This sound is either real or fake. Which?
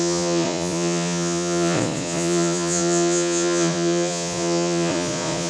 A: fake